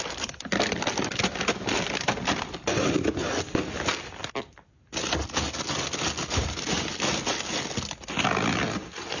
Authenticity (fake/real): real